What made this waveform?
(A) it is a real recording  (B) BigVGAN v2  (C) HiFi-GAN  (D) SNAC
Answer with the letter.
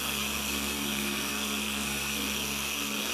D